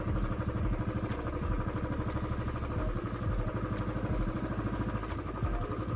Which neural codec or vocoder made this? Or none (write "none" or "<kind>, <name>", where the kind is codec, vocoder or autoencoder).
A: none